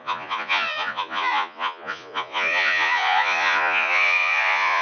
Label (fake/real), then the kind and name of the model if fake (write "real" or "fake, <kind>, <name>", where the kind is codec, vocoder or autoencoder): fake, vocoder, Vocos